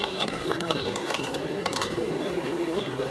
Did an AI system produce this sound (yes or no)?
yes